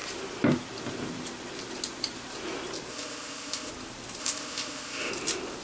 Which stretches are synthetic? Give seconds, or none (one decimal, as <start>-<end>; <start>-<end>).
2.9-3.7; 4.2-5.1